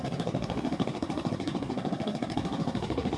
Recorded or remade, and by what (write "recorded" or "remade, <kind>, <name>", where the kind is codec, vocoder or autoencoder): remade, codec, SNAC